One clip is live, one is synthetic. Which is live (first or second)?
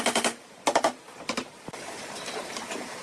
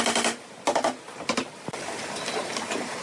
second